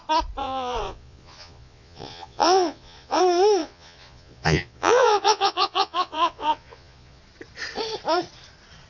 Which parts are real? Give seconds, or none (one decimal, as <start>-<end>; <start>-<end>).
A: 0.0-0.4; 3.2-3.6; 7.2-8.9